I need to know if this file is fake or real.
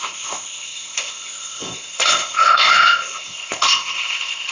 fake